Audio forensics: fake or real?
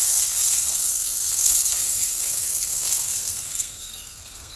fake